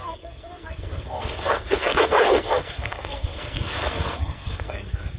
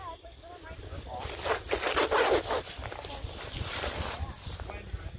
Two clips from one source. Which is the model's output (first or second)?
first